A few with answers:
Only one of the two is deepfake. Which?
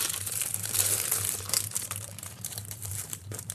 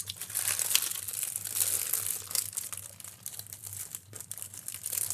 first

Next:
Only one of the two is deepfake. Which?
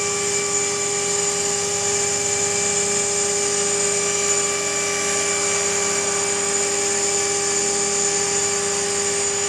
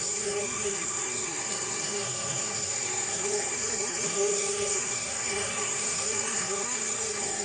second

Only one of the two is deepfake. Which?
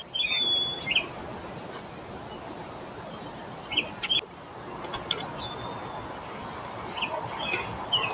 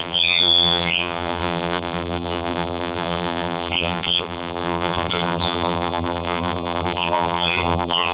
second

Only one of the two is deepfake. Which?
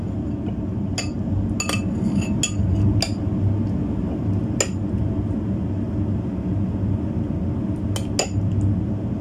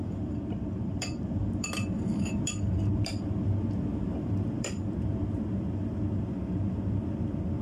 second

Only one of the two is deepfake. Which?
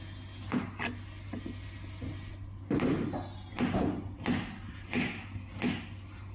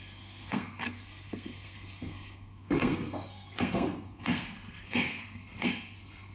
second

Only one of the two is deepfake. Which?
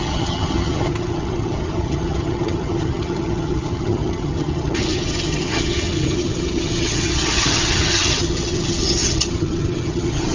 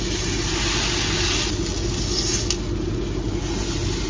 first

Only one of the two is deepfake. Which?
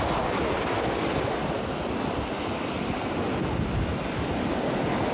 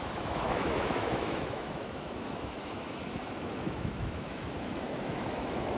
second